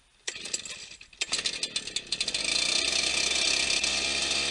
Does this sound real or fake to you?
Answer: real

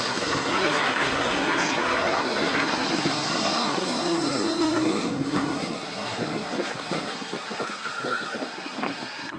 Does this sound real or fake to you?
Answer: fake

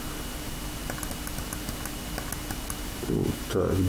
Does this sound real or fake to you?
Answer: real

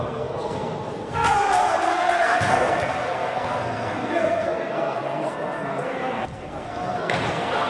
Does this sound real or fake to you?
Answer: fake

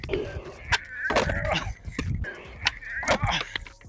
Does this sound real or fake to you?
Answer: real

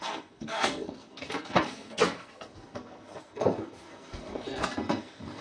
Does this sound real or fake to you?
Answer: fake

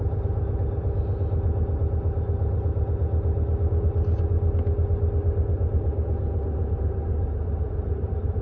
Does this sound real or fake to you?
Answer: real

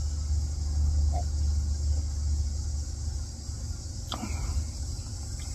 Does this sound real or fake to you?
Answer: real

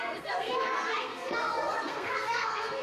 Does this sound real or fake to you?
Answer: fake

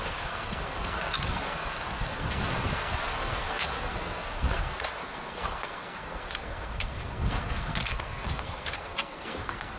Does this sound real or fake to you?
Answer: fake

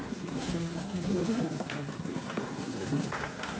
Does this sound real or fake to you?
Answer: fake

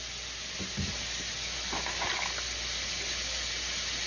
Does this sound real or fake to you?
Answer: real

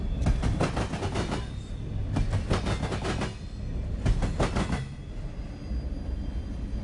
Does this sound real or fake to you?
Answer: real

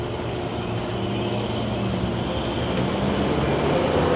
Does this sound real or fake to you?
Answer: real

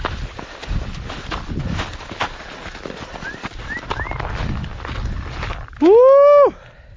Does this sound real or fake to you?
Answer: real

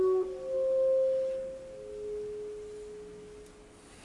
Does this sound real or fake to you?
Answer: real